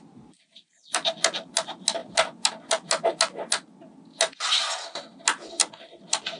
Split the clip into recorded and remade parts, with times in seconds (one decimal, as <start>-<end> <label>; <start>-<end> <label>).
0.0-6.4 recorded